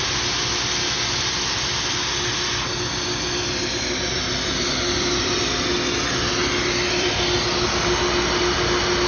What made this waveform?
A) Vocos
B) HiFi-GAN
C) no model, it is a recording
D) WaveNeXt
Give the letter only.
C